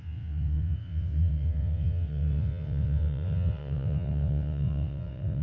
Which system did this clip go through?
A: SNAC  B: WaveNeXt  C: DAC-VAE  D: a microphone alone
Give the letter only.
B